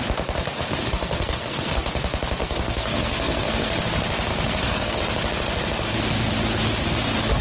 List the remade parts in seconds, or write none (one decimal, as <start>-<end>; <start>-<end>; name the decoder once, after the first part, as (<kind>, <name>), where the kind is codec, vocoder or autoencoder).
0.9-1.9 (codec, SNAC); 2.4-3.8; 4.3-5.0